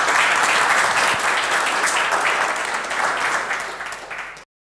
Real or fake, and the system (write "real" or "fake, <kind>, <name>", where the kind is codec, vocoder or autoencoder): real